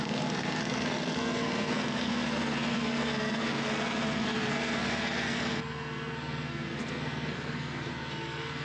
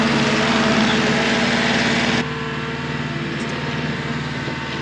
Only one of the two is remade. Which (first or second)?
first